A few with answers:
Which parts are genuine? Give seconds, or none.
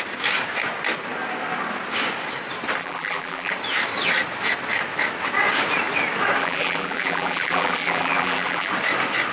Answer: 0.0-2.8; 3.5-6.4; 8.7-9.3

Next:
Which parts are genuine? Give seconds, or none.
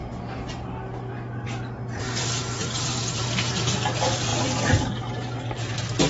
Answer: 0.0-6.1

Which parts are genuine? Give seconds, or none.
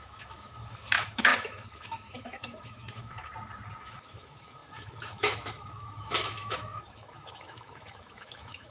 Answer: 3.3-3.8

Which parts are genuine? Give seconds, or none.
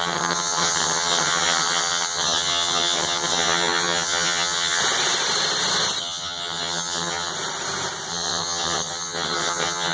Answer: 4.8-6.0; 7.3-8.1